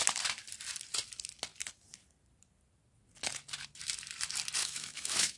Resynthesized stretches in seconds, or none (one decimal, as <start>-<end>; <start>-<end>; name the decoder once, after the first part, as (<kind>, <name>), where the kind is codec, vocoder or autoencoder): 4.6-5.4 (autoencoder, DAC-VAE)

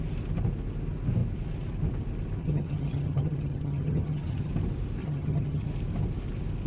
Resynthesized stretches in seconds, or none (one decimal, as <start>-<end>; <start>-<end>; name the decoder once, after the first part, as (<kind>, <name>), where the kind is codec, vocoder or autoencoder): 2.4-4.5 (vocoder, HiFi-GAN); 5.0-5.7

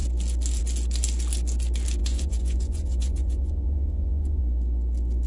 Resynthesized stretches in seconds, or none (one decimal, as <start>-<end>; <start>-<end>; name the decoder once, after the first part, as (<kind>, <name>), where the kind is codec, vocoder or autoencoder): 2.0-4.4 (vocoder, Vocos)